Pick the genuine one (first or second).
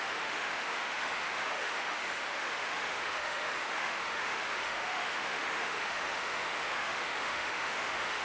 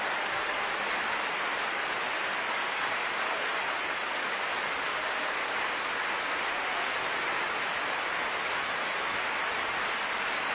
second